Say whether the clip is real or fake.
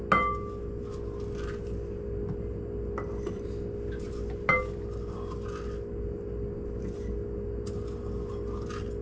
real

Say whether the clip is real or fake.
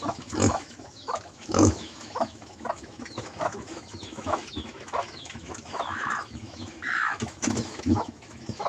fake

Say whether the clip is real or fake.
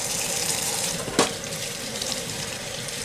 fake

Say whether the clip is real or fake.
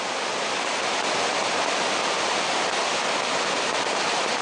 real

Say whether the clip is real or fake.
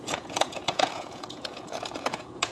fake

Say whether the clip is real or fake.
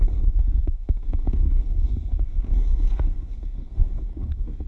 fake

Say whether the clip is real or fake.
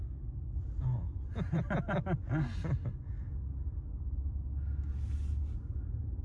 real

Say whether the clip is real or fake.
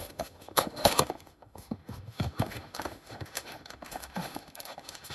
fake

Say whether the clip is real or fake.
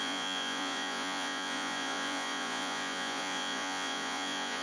fake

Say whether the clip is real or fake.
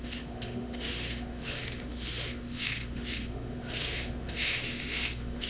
fake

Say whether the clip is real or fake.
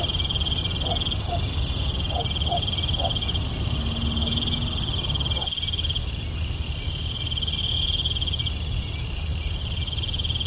real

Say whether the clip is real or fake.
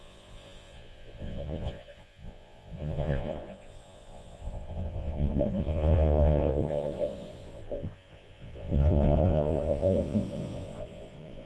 fake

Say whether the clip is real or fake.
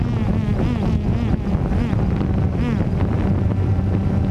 real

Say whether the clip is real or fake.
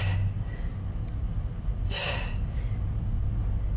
real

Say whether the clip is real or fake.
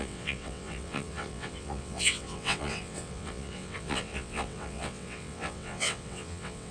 fake